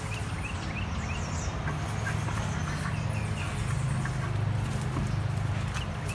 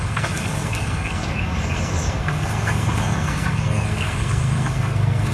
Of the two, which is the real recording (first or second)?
first